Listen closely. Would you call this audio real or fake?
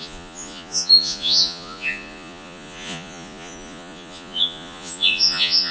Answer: fake